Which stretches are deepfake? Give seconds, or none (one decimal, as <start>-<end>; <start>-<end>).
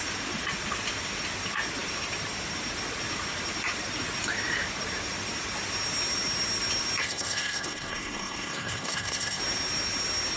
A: 7.0-9.4